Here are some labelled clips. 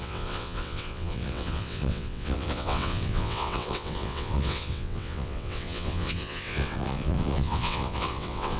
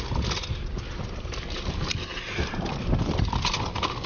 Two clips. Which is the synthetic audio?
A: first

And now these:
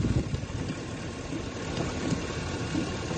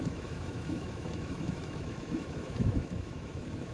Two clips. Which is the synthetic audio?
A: second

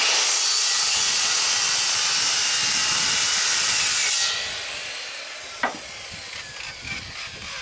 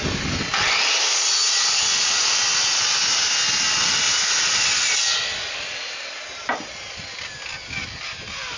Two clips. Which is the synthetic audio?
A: first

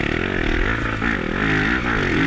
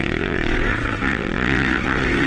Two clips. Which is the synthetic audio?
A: second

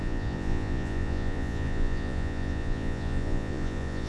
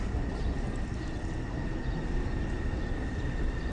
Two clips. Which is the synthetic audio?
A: first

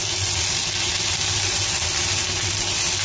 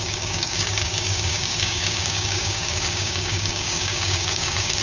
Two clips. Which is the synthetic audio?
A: second